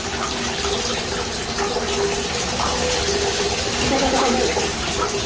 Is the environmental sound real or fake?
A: real